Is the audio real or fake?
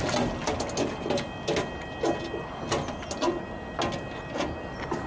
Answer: real